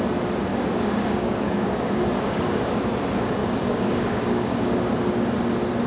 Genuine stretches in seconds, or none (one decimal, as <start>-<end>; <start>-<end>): 0.0-0.5; 2.8-3.4; 4.9-5.9